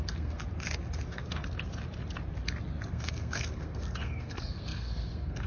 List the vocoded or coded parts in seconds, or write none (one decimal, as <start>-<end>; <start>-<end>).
0.0-0.4; 1.1-1.7; 2.9-5.5